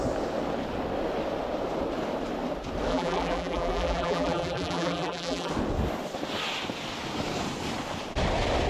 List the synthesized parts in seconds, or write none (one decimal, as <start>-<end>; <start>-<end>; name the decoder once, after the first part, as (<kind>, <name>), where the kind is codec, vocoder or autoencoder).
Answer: 2.9-5.5 (vocoder, BigVGAN v2)